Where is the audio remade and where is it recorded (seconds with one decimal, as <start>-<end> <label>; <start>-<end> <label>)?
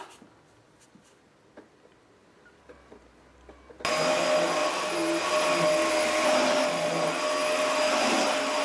0.0-5.8 recorded; 5.8-7.1 remade; 7.1-8.6 recorded